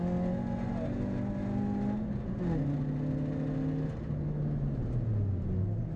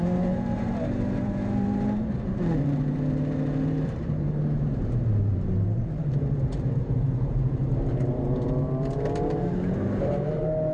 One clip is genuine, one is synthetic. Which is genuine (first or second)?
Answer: first